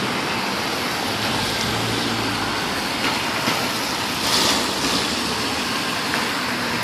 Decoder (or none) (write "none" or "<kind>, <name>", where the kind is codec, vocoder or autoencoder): none